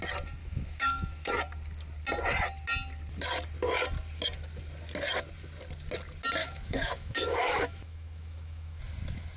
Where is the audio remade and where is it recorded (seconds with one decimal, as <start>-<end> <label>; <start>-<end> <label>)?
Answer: 0.0-0.4 recorded; 0.4-1.3 remade; 1.3-6.4 recorded; 6.4-8.8 remade; 8.8-9.4 recorded